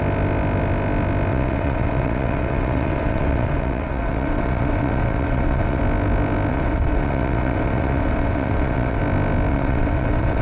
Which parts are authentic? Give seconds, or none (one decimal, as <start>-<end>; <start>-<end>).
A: 0.0-1.3; 5.8-6.5; 9.0-9.5